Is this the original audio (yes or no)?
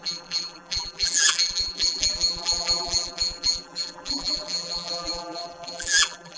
no